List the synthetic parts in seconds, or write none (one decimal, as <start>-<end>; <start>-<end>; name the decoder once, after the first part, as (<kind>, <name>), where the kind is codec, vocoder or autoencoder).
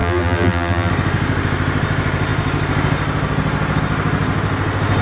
0.0-0.9 (vocoder, BigVGAN v2)